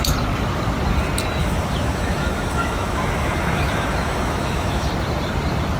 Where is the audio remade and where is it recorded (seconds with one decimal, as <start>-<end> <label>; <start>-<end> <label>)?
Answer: 0.0-1.4 recorded; 1.4-4.9 remade; 4.9-5.8 recorded